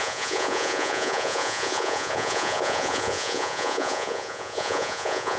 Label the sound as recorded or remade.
remade